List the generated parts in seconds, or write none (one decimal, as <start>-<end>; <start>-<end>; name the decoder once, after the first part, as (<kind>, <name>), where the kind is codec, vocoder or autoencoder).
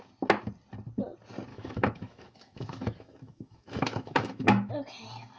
1.5-4.7 (autoencoder, DAC-VAE)